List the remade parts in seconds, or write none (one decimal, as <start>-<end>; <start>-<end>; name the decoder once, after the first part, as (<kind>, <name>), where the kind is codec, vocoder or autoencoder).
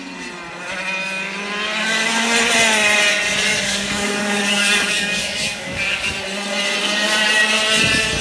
3.5-6.1 (codec, DAC)